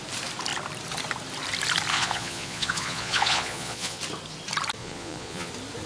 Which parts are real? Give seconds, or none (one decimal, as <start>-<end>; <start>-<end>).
0.0-1.9; 4.0-4.8; 5.5-5.9